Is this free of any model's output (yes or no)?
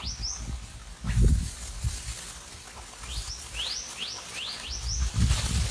yes